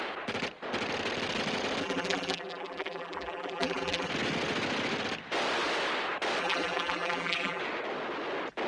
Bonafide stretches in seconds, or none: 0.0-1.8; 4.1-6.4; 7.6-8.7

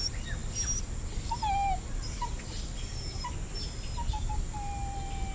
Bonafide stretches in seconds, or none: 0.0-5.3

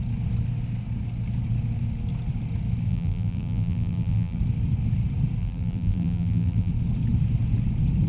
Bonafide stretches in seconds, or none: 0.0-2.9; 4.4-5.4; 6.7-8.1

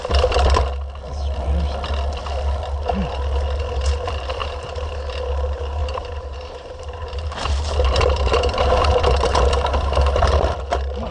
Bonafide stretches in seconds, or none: 0.0-4.4; 5.0-5.8; 8.9-11.1